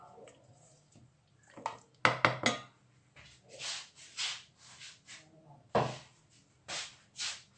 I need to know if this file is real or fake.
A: real